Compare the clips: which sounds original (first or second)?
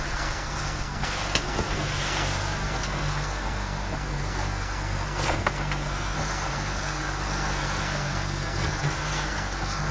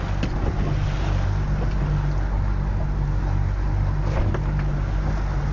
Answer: second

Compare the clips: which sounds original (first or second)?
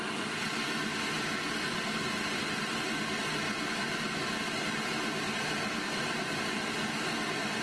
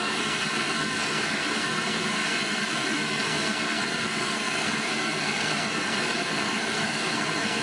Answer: first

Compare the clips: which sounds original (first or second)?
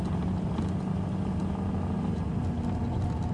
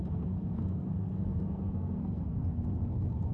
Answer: first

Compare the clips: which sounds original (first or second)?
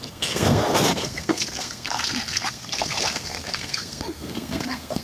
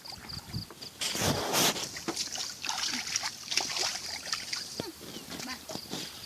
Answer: second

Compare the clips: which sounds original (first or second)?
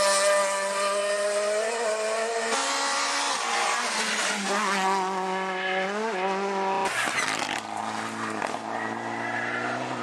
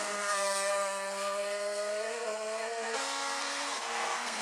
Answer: first